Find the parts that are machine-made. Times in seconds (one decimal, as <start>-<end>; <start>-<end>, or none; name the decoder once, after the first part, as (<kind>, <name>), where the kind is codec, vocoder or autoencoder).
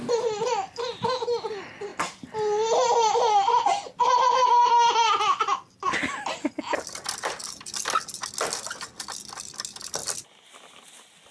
none